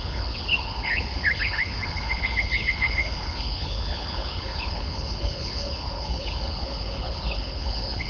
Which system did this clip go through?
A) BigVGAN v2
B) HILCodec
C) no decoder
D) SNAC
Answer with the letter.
B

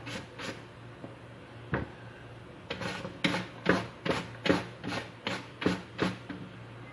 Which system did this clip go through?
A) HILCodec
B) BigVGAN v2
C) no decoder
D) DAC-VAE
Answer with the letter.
C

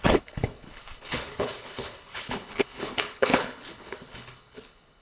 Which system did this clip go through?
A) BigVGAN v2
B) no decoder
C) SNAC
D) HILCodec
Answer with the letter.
D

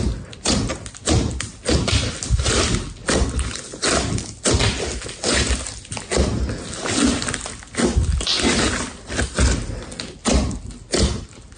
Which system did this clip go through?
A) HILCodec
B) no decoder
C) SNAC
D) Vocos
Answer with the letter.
B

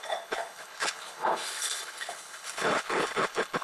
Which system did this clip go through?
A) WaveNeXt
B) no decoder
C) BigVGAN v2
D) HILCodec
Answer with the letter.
D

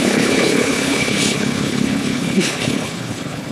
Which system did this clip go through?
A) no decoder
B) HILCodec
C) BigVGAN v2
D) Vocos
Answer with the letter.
B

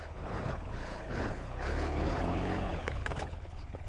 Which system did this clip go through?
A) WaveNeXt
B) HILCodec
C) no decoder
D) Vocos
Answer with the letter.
B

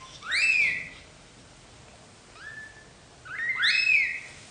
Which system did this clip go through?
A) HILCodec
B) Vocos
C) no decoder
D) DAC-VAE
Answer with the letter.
C